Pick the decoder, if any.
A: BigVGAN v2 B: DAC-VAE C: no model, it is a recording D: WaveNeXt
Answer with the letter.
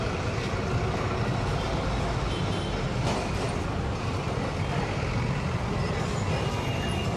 C